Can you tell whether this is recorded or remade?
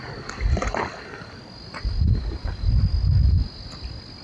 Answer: recorded